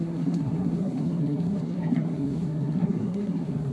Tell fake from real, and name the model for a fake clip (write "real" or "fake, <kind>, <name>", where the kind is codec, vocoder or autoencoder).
fake, codec, SNAC